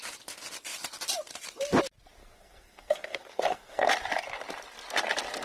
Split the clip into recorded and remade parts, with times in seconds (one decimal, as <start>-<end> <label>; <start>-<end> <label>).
0.0-2.2 recorded; 2.2-3.9 remade; 3.9-5.4 recorded